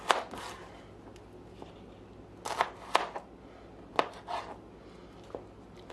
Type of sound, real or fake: real